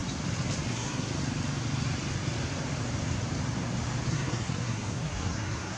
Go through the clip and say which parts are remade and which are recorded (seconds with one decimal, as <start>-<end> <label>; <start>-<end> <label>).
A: 0.0-0.7 recorded; 0.7-1.1 remade; 1.1-4.1 recorded; 4.1-5.8 remade